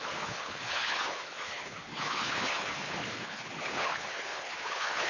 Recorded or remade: remade